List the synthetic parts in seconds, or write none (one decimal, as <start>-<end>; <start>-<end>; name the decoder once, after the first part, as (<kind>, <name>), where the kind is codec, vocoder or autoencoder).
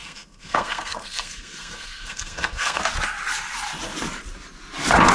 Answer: 0.0-2.8 (codec, SNAC)